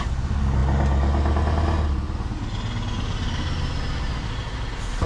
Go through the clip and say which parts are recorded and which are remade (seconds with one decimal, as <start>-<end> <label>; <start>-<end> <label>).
0.0-5.1 recorded